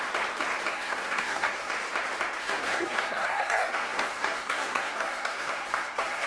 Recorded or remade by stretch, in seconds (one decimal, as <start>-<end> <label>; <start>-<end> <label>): 0.0-0.7 recorded; 0.7-1.7 remade; 1.7-2.4 recorded; 2.4-6.3 remade